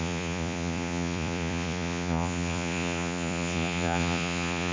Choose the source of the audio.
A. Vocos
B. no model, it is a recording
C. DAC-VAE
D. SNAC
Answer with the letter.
A